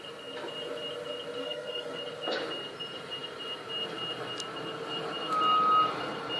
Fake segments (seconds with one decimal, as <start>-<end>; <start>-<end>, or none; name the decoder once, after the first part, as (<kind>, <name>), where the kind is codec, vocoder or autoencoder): 1.4-2.0 (codec, SNAC)